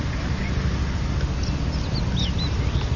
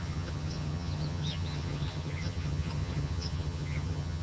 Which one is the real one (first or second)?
first